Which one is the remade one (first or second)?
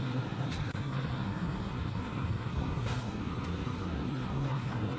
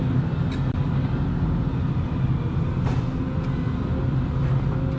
first